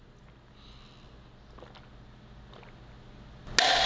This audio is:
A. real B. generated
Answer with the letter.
A